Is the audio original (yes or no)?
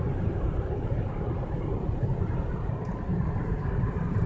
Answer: yes